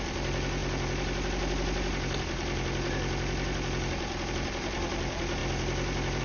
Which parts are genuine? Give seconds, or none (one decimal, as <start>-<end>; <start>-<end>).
5.4-6.2